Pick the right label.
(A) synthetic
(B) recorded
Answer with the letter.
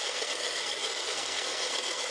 A